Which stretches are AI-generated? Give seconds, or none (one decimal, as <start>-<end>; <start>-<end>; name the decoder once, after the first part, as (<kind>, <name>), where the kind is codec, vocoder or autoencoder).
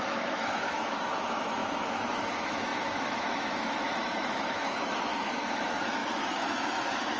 0.0-7.2 (autoencoder, DAC-VAE)